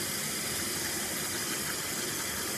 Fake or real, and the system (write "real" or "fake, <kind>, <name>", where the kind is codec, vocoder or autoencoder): real